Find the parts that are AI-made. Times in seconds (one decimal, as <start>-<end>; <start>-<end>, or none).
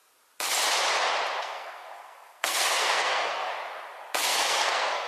1.4-3.5; 4.2-5.1